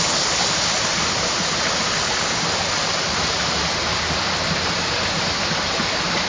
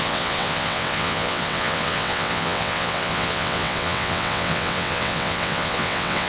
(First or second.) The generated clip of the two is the second